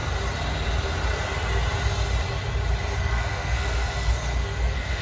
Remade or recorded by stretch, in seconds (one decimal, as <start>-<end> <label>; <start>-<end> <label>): 0.0-3.0 recorded; 3.0-5.0 remade